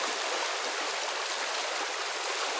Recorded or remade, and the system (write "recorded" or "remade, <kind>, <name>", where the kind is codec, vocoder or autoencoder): recorded